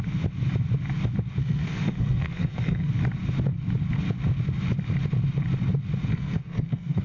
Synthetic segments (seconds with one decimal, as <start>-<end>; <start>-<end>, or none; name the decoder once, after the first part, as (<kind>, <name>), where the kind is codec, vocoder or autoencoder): 1.4-2.9 (codec, SNAC); 6.1-7.0